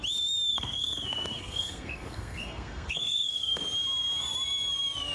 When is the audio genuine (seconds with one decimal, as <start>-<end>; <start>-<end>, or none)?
0.0-0.5; 3.6-5.1